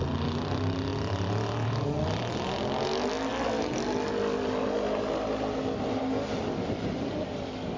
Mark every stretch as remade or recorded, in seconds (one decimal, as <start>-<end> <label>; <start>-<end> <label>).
0.0-7.8 recorded